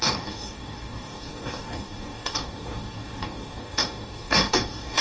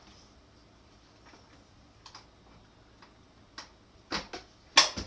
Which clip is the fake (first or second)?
first